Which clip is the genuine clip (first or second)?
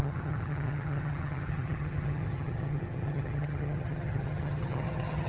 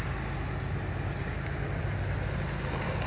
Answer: second